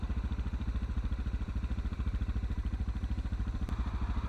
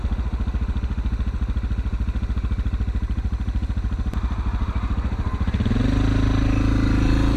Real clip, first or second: second